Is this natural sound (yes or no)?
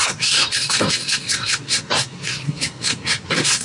no